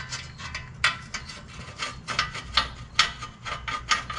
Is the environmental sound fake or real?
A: real